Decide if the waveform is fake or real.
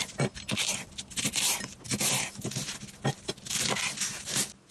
real